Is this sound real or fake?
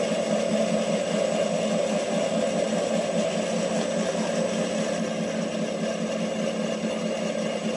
real